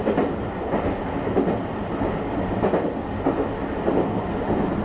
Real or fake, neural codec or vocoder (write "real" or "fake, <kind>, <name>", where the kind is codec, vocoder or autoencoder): real